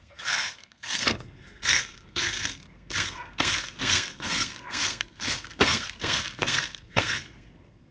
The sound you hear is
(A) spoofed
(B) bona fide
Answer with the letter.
A